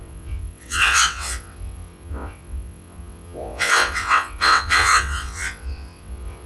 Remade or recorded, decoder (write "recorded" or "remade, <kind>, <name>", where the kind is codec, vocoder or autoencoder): remade, vocoder, WaveNeXt